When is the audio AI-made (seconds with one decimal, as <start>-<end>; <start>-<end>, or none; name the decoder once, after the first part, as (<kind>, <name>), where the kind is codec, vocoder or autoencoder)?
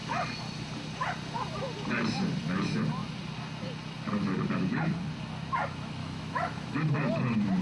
6.0-7.1 (autoencoder, DAC-VAE)